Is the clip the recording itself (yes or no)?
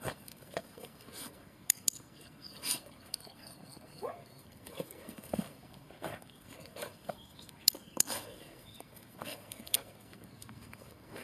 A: no